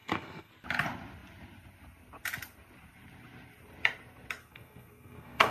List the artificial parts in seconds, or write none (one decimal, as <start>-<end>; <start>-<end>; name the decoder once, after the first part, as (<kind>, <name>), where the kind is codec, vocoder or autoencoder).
0.0-0.5 (codec, SNAC); 4.4-5.5

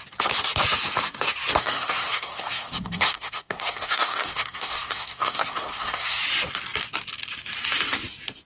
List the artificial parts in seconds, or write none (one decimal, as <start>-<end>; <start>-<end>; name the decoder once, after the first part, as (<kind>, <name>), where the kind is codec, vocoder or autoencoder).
1.6-6.2 (codec, SNAC)